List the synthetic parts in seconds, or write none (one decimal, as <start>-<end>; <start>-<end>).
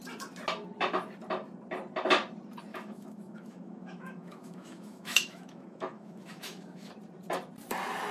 2.7-6.9